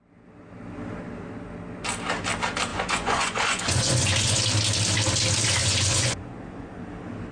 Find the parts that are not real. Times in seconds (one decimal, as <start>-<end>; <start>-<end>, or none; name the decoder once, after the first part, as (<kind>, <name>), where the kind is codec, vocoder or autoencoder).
2.7-4.4 (vocoder, Vocos); 5.6-6.8